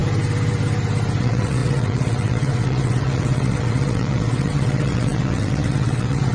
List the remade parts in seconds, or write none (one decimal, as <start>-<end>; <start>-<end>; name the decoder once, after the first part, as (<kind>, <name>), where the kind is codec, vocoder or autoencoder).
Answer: 1.2-6.3 (vocoder, WaveNeXt)